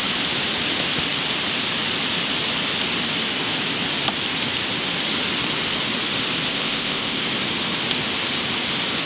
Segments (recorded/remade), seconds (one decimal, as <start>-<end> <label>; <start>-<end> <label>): 0.0-6.5 recorded; 6.5-7.2 remade; 7.2-9.1 recorded